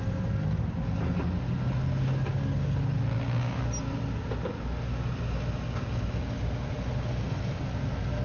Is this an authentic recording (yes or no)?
yes